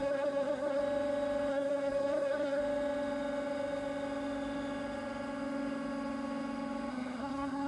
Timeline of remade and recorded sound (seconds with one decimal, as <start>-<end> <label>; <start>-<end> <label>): 0.0-0.8 remade; 0.8-1.5 recorded; 1.5-2.6 remade; 2.6-6.9 recorded; 6.9-7.7 remade